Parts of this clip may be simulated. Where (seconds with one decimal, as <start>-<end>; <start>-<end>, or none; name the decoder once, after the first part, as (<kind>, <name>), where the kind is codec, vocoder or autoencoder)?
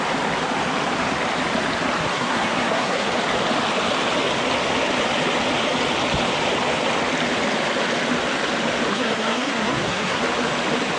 2.1-3.1 (codec, SNAC); 8.9-10.2